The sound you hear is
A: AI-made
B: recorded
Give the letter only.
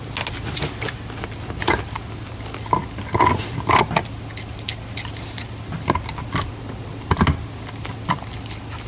B